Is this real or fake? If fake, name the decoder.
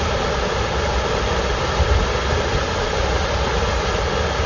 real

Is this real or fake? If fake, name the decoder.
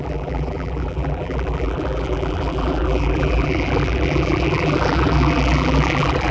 fake, vocoder, BigVGAN v2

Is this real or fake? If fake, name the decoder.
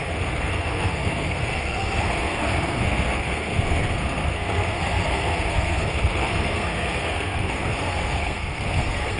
fake, codec, SNAC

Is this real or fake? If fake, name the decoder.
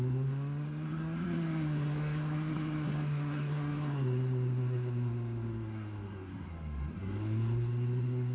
fake, codec, SNAC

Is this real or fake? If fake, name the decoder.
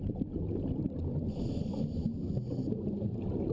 real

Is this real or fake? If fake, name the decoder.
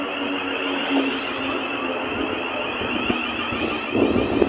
real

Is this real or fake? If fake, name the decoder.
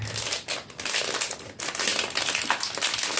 real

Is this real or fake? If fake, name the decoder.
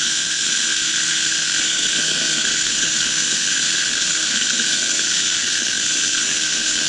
fake, codec, SNAC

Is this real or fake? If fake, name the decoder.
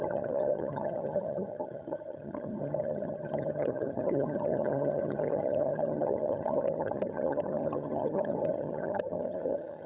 fake, vocoder, HiFi-GAN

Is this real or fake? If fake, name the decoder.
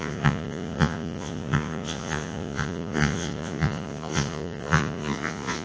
fake, vocoder, Vocos